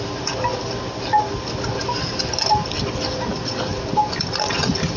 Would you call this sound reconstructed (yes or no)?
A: no